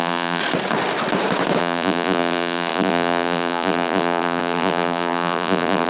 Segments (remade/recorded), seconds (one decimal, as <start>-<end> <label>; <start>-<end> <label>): 0.0-0.4 remade; 0.4-1.6 recorded; 1.6-5.9 remade